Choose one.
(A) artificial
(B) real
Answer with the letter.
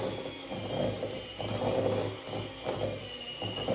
B